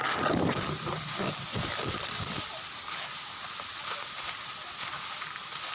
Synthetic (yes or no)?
no